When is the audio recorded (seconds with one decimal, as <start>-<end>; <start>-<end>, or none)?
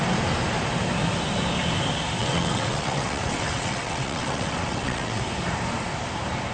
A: 0.0-2.2; 5.2-6.5